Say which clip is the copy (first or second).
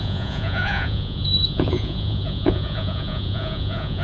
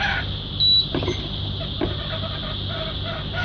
first